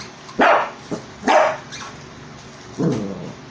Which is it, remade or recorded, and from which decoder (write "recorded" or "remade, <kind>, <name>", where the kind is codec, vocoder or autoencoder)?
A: remade, vocoder, BigVGAN v2